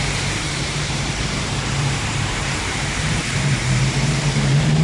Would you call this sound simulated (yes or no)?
yes